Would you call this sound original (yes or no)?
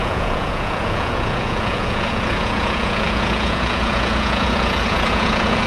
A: no